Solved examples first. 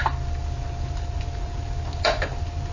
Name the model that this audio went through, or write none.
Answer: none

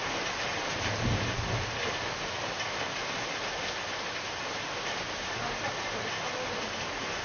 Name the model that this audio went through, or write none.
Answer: none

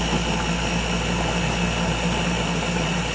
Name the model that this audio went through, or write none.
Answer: none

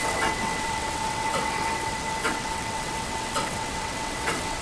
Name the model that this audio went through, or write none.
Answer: vocoder, WaveNeXt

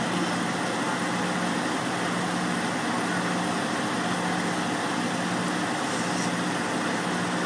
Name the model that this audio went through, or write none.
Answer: none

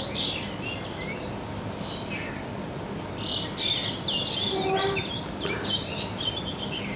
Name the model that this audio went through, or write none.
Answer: none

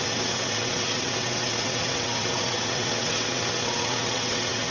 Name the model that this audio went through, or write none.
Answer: vocoder, WaveNeXt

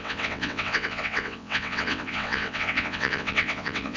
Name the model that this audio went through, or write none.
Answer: vocoder, WaveNeXt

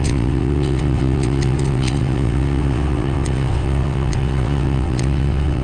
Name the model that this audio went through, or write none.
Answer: vocoder, WaveNeXt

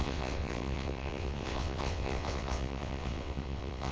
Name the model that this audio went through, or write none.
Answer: vocoder, WaveNeXt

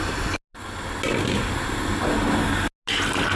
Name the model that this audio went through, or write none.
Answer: none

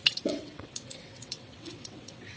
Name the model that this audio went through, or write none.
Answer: vocoder, WaveNeXt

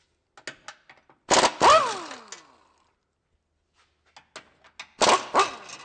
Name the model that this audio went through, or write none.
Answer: none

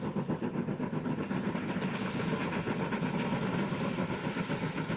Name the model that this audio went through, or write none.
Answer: none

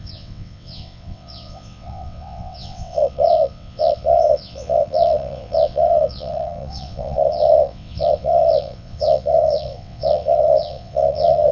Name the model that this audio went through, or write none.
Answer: vocoder, WaveNeXt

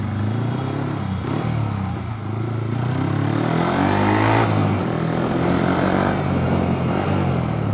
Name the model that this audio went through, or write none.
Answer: none